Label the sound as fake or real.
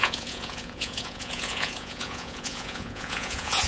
fake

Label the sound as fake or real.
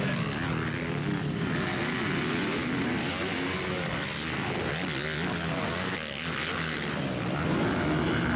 real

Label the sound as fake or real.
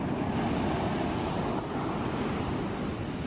real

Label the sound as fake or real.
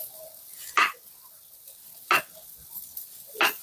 real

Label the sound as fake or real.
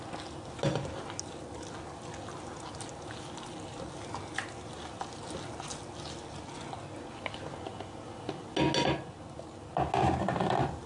real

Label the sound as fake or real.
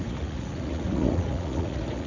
fake